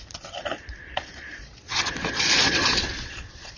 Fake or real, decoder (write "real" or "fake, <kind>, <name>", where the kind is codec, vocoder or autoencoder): fake, vocoder, Vocos